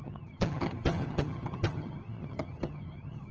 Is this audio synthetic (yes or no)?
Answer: yes